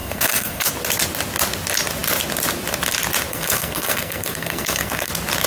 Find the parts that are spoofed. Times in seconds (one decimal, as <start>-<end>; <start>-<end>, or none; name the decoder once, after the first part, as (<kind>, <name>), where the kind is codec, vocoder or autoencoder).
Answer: 0.0-0.7 (codec, SNAC); 3.3-5.1